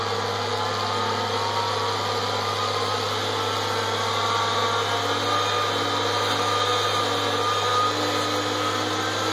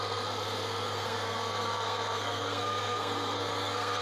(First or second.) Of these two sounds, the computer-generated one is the second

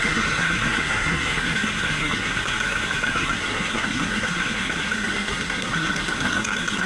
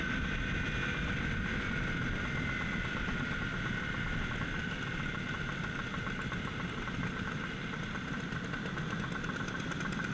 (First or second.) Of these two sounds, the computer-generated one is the first